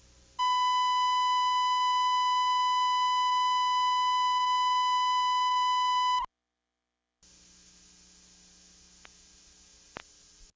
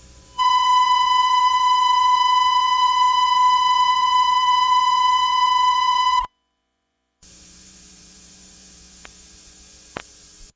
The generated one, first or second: second